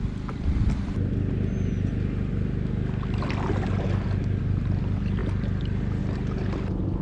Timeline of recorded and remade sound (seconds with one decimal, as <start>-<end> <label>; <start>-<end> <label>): 0.0-7.0 recorded